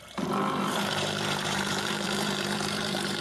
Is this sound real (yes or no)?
no